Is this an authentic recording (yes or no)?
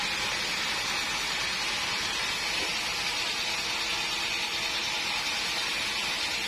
yes